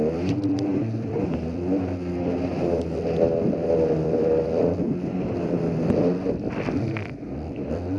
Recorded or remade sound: remade